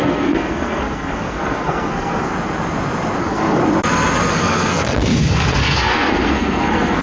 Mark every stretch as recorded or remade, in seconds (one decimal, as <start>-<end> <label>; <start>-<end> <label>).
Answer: 0.0-2.3 remade; 2.3-3.2 recorded; 3.2-3.6 remade; 3.6-4.3 recorded; 4.3-7.0 remade